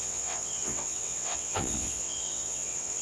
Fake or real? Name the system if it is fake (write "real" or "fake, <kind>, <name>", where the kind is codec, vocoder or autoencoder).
fake, vocoder, WaveNeXt